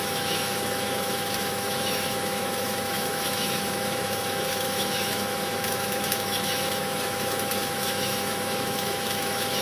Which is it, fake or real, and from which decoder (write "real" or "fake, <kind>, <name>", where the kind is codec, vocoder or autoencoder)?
fake, autoencoder, DAC-VAE